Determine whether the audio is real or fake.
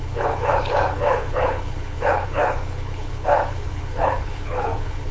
fake